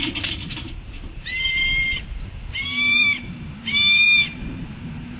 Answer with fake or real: fake